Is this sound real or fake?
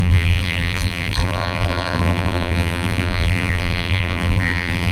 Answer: fake